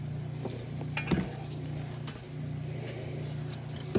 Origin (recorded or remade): recorded